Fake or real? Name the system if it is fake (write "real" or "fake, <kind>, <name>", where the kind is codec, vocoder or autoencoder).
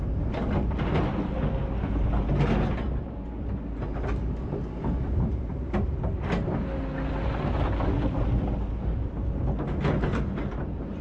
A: real